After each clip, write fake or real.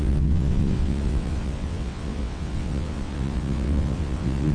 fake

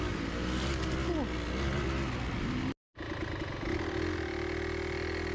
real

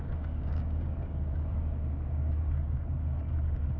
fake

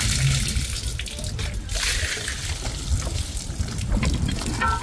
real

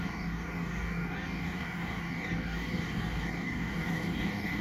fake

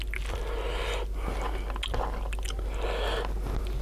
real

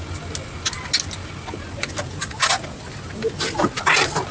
real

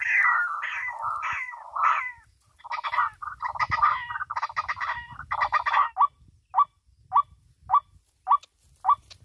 real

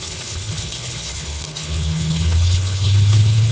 fake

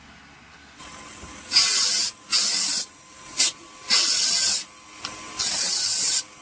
real